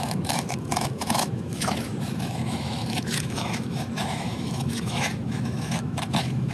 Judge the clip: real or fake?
fake